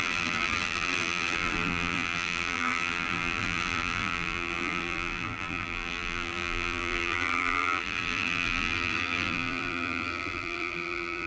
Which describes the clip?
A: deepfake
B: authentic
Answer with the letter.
A